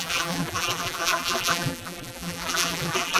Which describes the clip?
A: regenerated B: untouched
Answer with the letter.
A